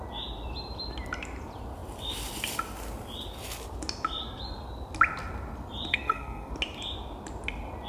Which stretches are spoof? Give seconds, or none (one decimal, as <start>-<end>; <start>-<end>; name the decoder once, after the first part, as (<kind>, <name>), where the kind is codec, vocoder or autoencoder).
5.9-6.5 (codec, SNAC)